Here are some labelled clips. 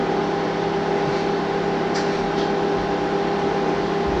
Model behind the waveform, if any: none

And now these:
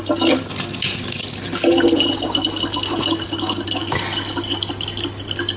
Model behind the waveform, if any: none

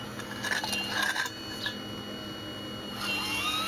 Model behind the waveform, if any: none